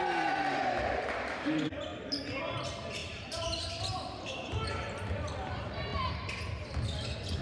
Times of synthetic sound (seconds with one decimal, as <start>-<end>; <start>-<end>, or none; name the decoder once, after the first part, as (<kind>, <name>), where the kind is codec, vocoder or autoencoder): 0.0-3.0 (vocoder, BigVGAN v2); 4.7-5.9